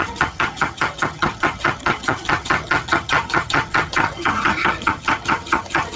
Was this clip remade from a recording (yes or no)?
yes